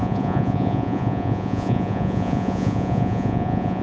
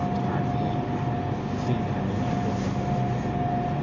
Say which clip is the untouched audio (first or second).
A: second